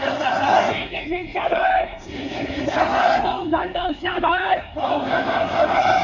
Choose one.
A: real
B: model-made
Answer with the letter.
B